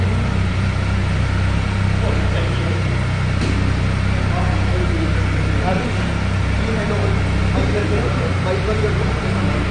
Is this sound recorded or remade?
recorded